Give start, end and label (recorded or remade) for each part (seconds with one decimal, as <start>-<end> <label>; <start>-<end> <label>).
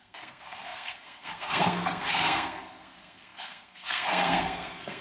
0.0-5.0 remade